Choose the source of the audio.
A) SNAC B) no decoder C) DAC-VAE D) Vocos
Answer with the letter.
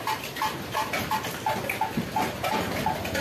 B